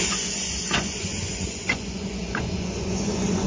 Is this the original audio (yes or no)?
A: no